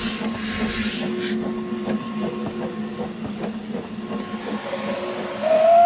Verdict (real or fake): real